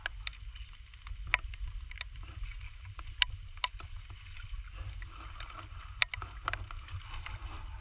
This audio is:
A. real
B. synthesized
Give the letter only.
A